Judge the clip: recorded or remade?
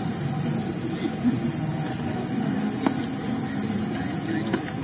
recorded